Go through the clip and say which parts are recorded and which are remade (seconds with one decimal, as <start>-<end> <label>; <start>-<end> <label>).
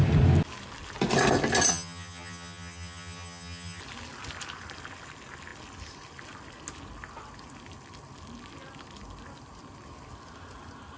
0.0-1.7 recorded; 1.7-3.8 remade; 3.8-11.0 recorded